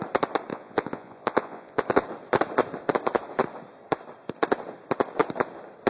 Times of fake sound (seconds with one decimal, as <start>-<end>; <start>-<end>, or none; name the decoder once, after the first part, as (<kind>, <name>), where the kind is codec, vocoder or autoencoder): 0.5-2.0 (vocoder, Vocos)